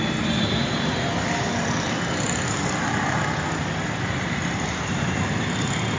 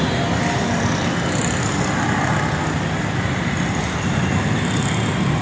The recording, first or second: second